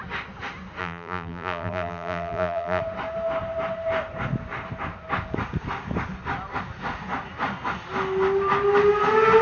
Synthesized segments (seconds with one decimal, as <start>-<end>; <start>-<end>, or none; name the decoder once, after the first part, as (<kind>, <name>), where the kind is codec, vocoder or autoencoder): 0.8-2.8 (vocoder, BigVGAN v2)